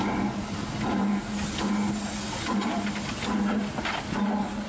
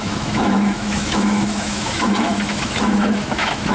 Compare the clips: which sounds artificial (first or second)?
second